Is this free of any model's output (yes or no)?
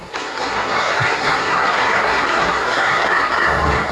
no